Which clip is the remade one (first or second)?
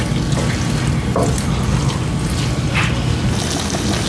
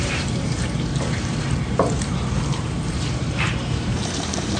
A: second